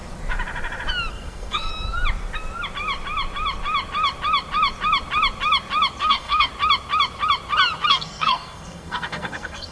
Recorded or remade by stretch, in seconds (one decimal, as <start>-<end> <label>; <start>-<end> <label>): 0.0-1.1 recorded; 1.1-1.7 remade; 1.7-6.0 recorded; 6.0-6.5 remade; 6.5-7.9 recorded; 7.9-9.7 remade